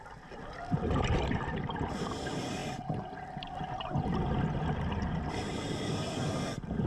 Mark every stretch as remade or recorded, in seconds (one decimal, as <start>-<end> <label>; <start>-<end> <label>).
0.0-6.9 recorded